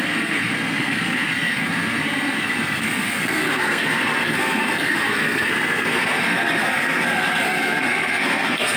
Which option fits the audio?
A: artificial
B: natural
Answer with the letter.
A